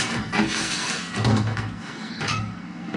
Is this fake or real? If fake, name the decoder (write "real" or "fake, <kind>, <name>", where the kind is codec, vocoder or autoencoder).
fake, codec, SNAC